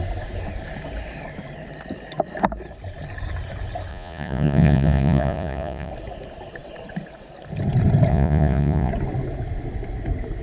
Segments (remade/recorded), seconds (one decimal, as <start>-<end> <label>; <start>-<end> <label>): 0.0-3.9 recorded; 3.9-5.9 remade; 5.9-8.1 recorded; 8.1-8.9 remade; 8.9-10.4 recorded